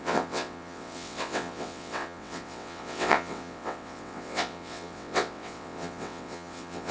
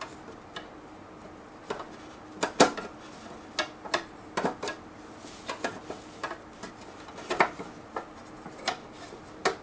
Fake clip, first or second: first